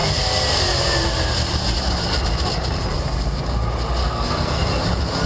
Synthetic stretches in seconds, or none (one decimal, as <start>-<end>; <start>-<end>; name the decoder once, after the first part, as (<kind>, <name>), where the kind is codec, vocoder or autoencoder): 4.0-4.7 (codec, SNAC)